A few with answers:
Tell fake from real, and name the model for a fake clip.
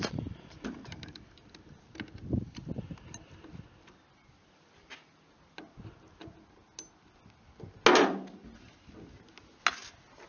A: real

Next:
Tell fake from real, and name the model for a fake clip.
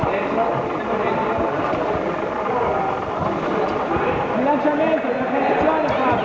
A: real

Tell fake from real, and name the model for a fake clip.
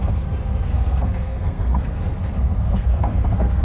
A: fake, codec, SNAC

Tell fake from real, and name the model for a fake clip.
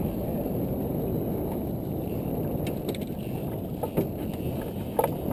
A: real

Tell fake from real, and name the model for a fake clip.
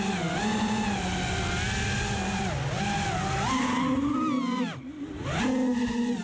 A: real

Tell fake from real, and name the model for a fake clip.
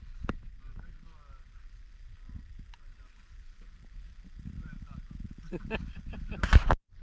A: real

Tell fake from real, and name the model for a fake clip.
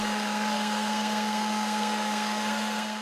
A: fake, codec, SNAC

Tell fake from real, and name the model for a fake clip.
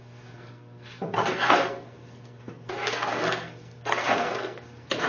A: fake, codec, SNAC